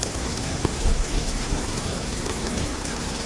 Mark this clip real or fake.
fake